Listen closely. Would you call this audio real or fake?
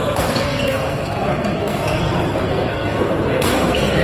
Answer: fake